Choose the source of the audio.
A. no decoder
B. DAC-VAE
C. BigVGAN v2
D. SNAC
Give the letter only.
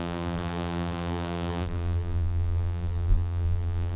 C